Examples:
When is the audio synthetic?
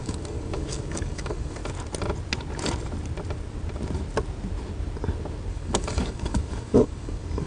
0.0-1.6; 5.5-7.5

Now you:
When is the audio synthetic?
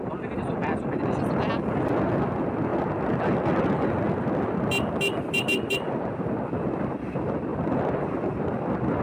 none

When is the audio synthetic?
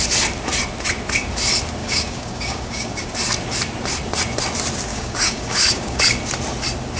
1.8-3.1; 4.9-6.0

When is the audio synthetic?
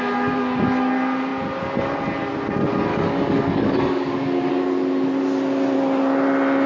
2.9-4.5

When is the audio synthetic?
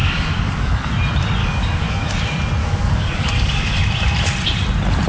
0.0-0.9; 1.4-2.1; 2.6-3.8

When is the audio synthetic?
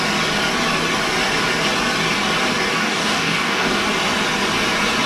2.7-3.8